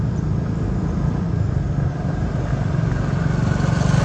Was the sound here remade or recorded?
recorded